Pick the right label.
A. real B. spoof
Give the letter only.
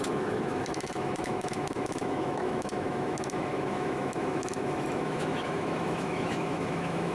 B